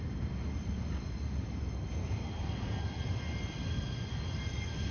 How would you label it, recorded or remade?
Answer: recorded